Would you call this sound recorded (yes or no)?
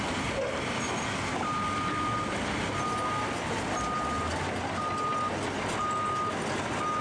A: yes